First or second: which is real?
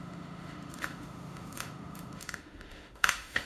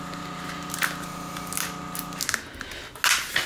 second